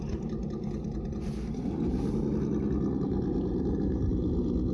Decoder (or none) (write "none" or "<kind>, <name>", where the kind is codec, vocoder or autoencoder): none